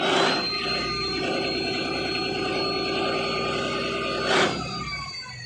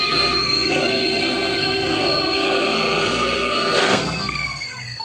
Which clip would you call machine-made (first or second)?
second